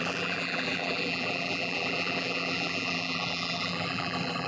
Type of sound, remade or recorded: remade